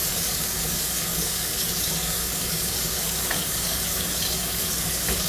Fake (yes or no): yes